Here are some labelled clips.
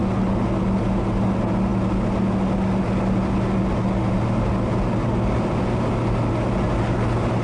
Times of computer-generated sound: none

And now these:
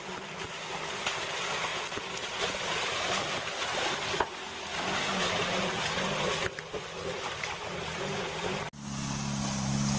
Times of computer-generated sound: none

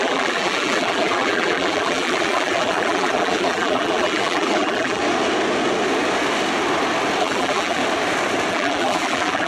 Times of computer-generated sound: 0.0-5.0 (vocoder, BigVGAN v2); 7.2-7.8; 8.5-9.5